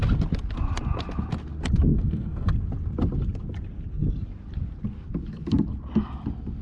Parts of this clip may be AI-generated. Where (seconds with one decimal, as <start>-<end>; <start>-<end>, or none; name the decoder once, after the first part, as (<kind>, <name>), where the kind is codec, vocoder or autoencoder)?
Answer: 1.9-2.5 (codec, SNAC)